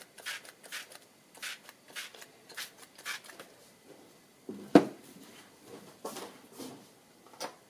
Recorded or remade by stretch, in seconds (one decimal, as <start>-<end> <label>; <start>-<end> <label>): 0.0-7.7 recorded